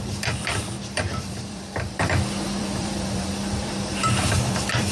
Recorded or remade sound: remade